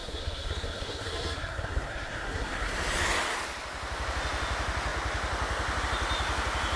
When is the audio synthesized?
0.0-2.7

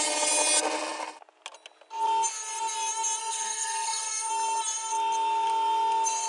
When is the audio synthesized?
3.2-4.3